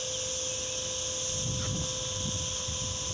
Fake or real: real